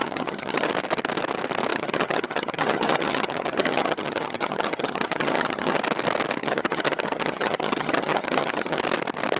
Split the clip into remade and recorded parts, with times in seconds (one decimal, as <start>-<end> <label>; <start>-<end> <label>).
0.0-0.7 remade; 0.7-1.7 recorded; 1.7-5.8 remade; 5.8-6.4 recorded; 6.4-8.8 remade; 8.8-9.4 recorded